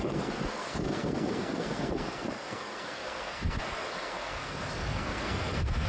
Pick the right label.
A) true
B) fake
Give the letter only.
B